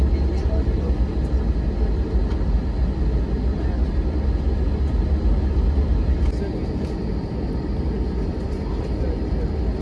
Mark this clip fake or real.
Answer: real